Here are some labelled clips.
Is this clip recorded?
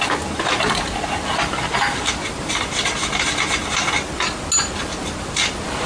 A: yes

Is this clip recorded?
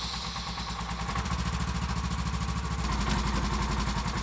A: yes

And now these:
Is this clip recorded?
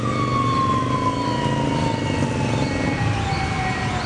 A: yes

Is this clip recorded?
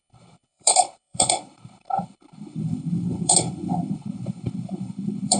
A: no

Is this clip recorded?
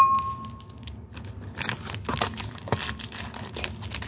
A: yes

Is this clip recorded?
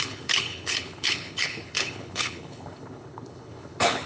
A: no